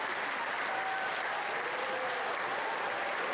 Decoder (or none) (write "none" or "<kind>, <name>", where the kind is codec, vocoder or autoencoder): none